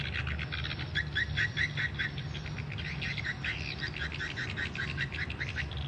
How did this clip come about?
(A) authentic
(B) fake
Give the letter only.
A